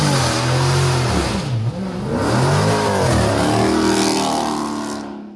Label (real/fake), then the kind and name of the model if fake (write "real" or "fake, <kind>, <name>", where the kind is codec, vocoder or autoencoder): real